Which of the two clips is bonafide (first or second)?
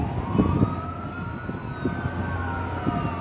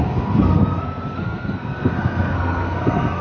first